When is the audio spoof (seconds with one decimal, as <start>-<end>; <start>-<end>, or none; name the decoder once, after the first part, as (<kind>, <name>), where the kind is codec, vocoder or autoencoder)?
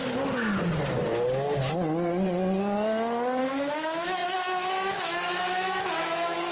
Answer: 3.4-6.5 (autoencoder, DAC-VAE)